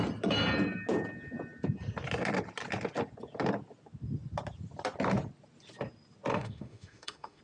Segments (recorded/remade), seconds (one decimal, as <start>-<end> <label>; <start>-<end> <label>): 0.0-6.3 recorded; 6.3-7.4 remade